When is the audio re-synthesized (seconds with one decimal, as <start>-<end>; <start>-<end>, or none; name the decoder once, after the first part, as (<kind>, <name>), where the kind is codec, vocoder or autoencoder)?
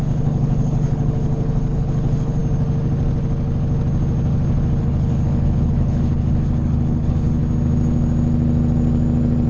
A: 0.0-2.4 (codec, HILCodec); 4.8-7.4